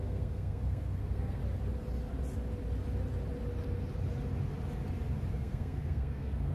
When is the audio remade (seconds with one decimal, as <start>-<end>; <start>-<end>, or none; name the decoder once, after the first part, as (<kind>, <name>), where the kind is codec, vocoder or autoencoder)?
0.0-1.4 (codec, SNAC); 5.3-6.5